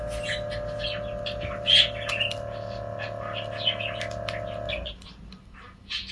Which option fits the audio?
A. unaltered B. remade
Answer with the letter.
A